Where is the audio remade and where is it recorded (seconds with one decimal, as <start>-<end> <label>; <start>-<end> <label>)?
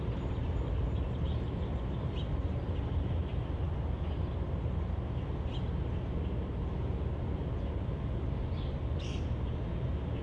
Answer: 0.0-3.2 remade; 3.2-6.6 recorded; 6.6-10.2 remade